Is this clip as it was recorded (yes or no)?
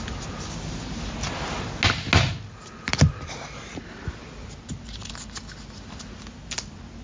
yes